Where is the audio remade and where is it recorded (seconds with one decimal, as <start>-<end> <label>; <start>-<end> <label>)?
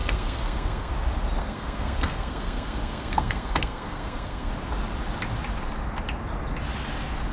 0.0-0.9 remade; 0.9-1.4 recorded; 1.4-4.5 remade; 4.5-7.3 recorded